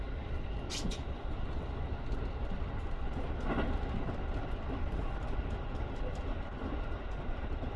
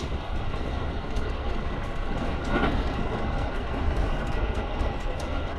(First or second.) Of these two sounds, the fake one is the second